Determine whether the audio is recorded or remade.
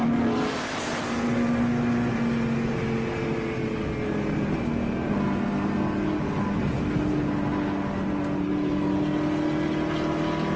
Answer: recorded